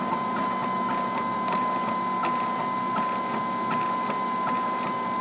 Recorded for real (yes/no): yes